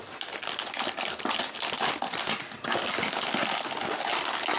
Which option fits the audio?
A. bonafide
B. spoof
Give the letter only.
A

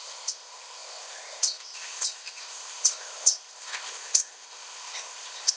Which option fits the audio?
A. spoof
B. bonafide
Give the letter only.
A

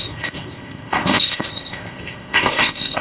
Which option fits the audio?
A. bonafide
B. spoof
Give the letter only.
B